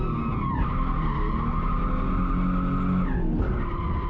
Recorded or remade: recorded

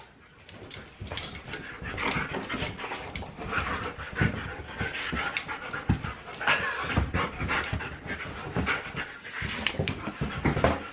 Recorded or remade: recorded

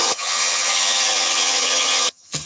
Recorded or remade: remade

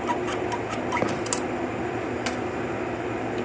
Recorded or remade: recorded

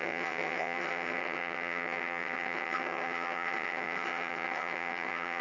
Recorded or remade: remade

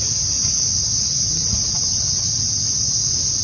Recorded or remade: recorded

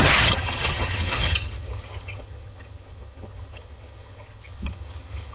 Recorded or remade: remade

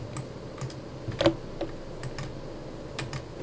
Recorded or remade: recorded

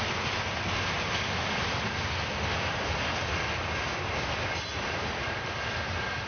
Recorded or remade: recorded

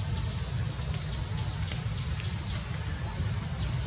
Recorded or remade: recorded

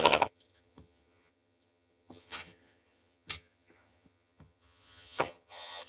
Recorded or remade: remade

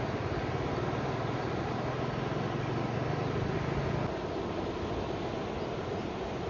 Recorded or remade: recorded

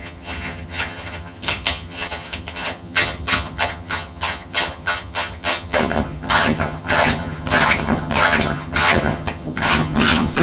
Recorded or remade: remade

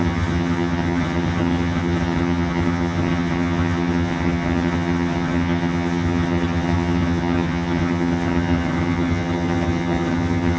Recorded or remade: remade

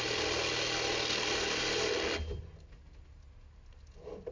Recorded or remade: recorded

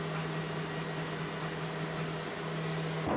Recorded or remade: recorded